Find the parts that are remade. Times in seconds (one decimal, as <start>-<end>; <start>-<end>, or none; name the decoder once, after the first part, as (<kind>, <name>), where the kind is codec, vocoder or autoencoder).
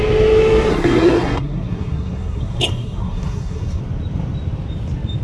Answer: 0.7-3.8 (codec, SNAC)